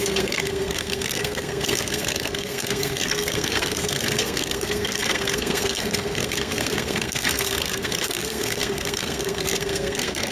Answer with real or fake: fake